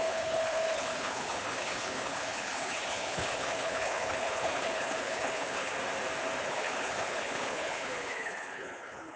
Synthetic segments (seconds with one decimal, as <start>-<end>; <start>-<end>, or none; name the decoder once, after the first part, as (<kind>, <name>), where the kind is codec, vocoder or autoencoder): 0.0-5.7 (codec, HILCodec); 6.4-9.2